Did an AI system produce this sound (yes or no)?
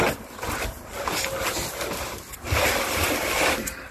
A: no